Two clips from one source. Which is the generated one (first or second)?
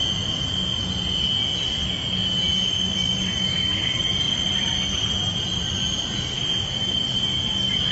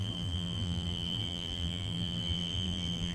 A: second